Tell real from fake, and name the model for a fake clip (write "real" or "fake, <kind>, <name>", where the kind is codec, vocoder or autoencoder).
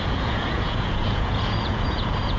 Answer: fake, vocoder, Vocos